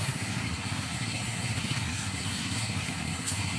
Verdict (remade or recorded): remade